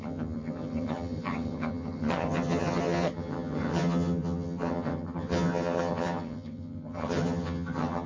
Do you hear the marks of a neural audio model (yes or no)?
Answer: yes